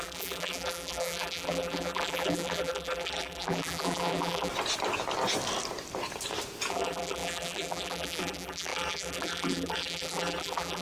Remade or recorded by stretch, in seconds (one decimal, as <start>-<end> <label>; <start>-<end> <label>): 0.0-4.5 remade; 4.5-6.7 recorded; 6.7-10.8 remade